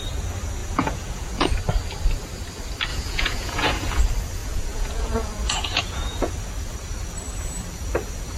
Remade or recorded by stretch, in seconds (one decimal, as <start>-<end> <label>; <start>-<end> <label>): 0.0-0.6 recorded; 0.6-1.5 remade; 1.5-2.9 recorded; 2.9-4.0 remade; 4.0-4.4 recorded; 4.4-6.3 remade; 6.3-8.4 recorded